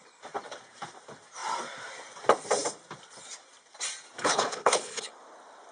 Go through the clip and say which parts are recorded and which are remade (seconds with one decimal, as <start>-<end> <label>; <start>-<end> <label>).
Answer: 0.0-4.2 recorded; 4.2-5.1 remade; 5.1-5.7 recorded